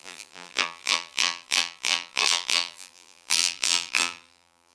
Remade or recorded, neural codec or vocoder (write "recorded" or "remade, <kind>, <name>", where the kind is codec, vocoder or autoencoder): remade, vocoder, BigVGAN v2